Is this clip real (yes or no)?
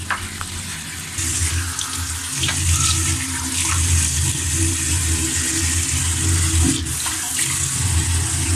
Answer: yes